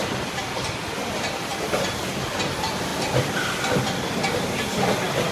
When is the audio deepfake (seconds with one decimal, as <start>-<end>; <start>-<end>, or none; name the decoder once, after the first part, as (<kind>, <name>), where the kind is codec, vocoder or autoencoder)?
none